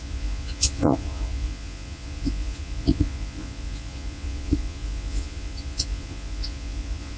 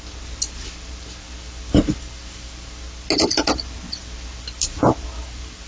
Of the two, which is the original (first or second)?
second